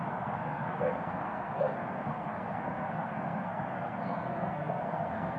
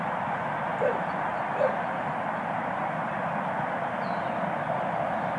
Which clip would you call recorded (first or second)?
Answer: second